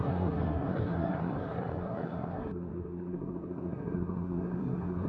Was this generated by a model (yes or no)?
yes